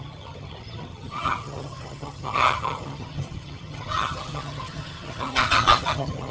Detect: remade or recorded remade